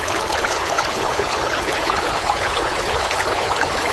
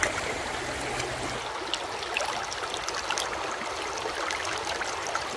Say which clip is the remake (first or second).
first